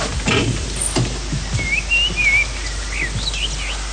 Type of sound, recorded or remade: recorded